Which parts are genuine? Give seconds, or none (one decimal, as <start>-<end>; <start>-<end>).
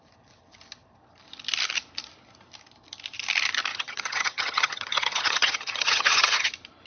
0.0-3.7; 6.5-6.9